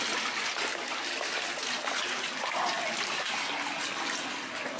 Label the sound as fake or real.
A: real